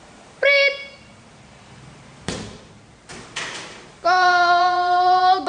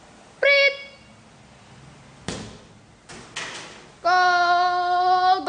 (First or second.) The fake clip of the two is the first